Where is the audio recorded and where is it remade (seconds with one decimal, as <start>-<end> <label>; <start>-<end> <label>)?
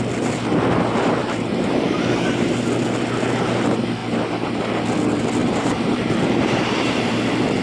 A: 0.0-1.2 recorded; 1.2-2.5 remade; 2.5-5.4 recorded; 5.4-7.1 remade; 7.1-7.6 recorded